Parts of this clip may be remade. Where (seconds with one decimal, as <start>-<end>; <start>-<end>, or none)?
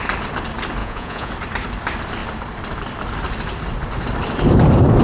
0.8-1.3